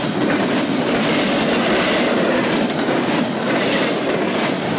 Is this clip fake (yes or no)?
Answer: no